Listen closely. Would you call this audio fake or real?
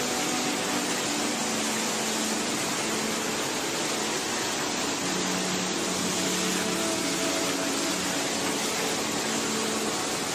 real